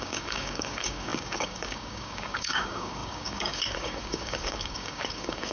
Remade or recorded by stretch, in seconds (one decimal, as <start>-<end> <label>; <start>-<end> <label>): 0.0-5.5 remade